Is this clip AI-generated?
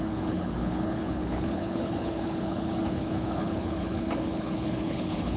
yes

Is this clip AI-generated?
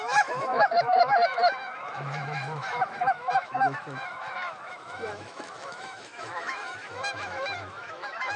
yes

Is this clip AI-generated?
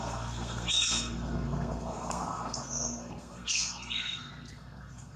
yes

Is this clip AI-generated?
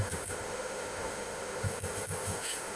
yes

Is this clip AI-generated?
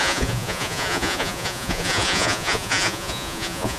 yes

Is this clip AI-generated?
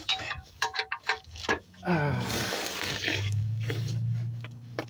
yes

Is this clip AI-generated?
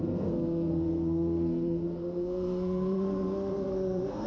yes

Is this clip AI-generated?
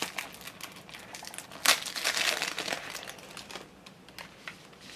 no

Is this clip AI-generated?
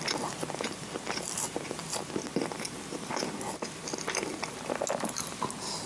no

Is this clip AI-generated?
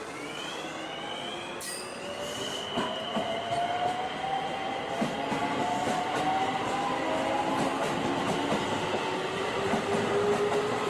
no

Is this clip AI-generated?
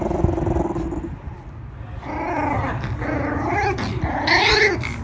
no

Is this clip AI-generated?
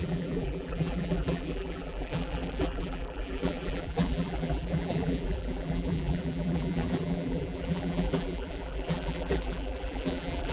yes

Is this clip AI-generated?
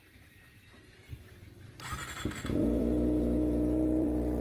yes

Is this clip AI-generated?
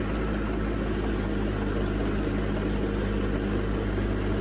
no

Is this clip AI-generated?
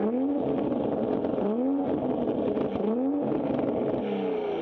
no